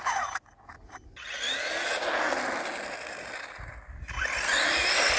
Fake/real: real